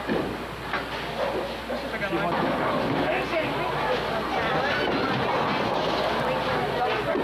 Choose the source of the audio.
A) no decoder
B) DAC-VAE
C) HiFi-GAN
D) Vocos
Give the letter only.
A